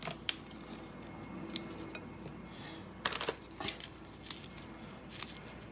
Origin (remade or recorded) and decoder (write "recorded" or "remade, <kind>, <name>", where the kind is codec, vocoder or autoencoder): recorded